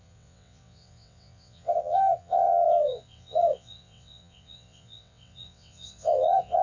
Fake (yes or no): yes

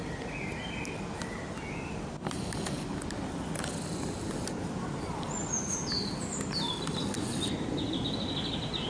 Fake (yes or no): no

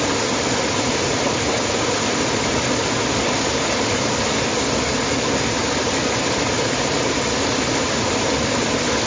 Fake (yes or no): no